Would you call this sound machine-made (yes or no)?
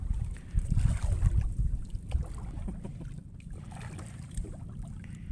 no